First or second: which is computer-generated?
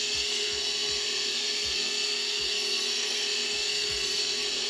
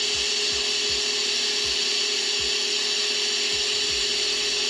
first